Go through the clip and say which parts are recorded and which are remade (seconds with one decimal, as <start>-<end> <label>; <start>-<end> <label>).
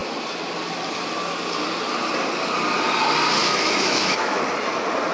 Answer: 0.0-3.4 recorded; 3.4-4.4 remade; 4.4-5.1 recorded